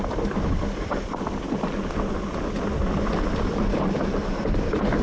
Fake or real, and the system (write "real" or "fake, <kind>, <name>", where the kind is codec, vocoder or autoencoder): real